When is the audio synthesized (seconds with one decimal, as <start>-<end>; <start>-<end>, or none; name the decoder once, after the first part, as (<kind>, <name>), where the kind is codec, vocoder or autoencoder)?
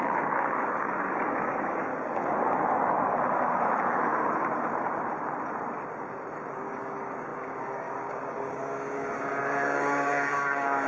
0.0-1.9 (codec, DAC); 6.5-10.9